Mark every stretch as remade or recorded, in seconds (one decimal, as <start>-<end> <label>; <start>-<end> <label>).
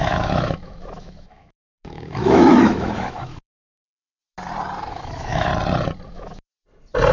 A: 0.0-4.2 remade; 4.2-4.9 recorded; 4.9-5.5 remade; 5.5-6.1 recorded; 6.1-6.5 remade; 6.5-7.1 recorded